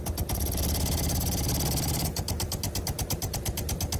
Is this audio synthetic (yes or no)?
no